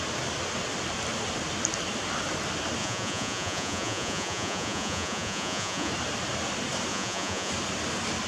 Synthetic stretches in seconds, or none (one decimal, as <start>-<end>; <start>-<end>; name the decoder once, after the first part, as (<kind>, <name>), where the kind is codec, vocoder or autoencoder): 2.8-5.9 (vocoder, Vocos); 6.9-7.5